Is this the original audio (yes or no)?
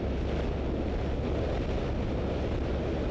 yes